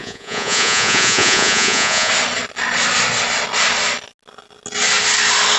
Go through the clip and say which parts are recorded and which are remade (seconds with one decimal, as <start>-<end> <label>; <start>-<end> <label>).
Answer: 0.0-2.1 remade; 2.1-5.6 recorded